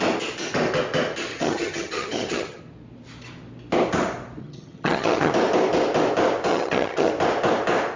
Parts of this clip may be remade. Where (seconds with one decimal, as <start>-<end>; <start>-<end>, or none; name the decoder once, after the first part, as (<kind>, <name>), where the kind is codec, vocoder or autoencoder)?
1.3-2.6 (vocoder, HiFi-GAN); 4.4-5.3; 6.5-7.1

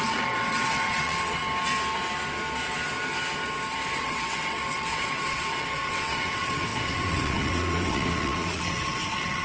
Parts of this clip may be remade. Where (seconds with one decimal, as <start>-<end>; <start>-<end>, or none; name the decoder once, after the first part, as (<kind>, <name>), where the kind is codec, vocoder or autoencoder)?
0.0-1.4 (vocoder, WaveNeXt); 3.9-9.4